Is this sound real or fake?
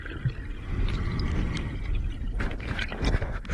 real